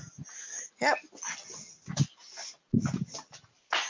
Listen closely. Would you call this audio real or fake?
real